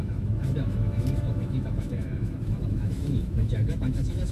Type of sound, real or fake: fake